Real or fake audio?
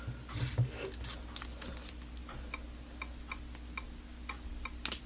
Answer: real